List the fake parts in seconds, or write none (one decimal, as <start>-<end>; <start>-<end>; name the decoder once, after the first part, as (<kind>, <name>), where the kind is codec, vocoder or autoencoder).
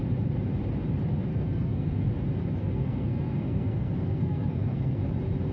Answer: 1.3-2.1 (codec, SNAC); 2.6-5.0